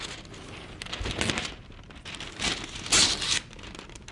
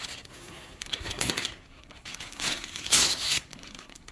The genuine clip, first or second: first